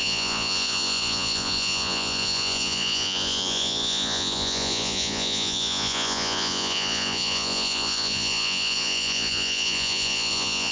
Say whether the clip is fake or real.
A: fake